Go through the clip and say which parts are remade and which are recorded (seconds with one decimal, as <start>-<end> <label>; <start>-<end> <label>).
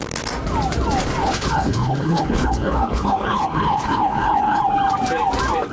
0.0-1.2 recorded; 1.2-4.6 remade; 4.6-5.7 recorded